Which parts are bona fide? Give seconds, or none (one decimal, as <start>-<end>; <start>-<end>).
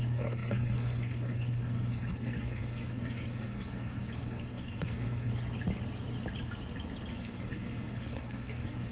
5.3-7.1